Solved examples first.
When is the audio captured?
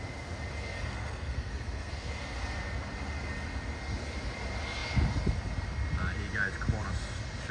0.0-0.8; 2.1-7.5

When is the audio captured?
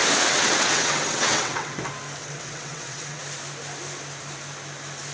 1.8-2.2; 3.2-5.1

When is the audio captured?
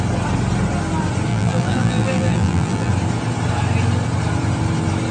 0.0-1.3; 2.9-5.1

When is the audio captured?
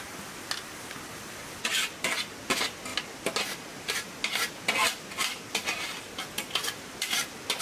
0.0-7.6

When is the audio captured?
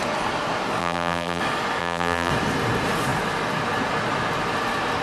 0.0-0.8; 1.4-1.8; 2.3-5.0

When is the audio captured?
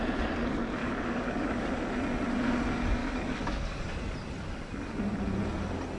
0.0-0.8; 1.7-3.0; 3.8-6.0